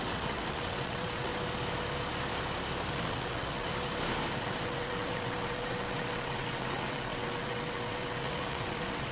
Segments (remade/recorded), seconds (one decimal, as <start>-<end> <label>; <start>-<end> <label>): 0.0-1.3 remade; 1.3-2.9 recorded; 2.9-3.7 remade; 3.7-4.4 recorded; 4.4-9.1 remade